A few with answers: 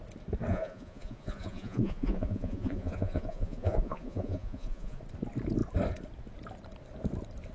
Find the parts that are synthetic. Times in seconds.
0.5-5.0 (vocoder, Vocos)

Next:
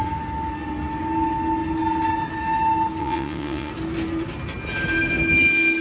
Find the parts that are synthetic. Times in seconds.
3.0-3.7 (vocoder, Vocos)

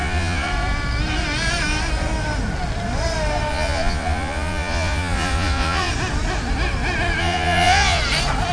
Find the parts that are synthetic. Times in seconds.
0.0-0.5 (vocoder, Vocos); 3.5-5.9; 7.2-8.0

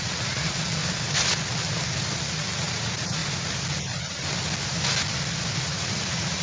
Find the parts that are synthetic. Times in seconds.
0.0-0.8 (vocoder, Vocos); 2.2-3.2; 5.6-6.4

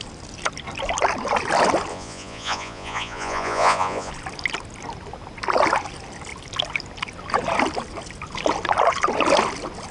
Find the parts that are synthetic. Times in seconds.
1.9-4.1 (vocoder, Vocos)

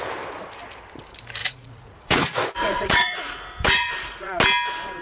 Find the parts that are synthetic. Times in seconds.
1.4-4.4 (vocoder, Vocos)

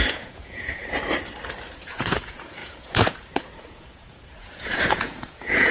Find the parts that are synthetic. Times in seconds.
0.0-0.8 (vocoder, Vocos); 1.7-5.7

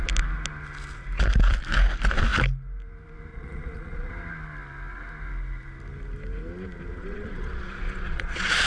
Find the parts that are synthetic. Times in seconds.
3.3-4.1 (vocoder, Vocos); 7.0-8.7